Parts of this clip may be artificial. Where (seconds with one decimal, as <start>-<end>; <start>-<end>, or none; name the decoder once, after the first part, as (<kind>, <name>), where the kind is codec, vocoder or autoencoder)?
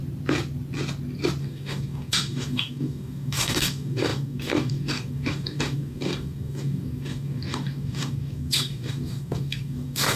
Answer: 1.4-10.2 (codec, DAC)